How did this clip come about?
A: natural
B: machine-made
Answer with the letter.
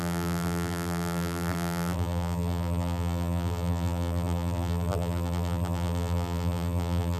B